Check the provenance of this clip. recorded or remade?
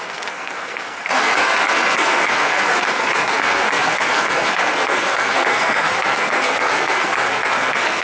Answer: remade